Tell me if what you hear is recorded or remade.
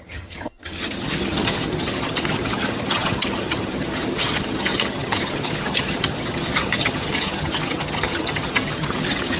remade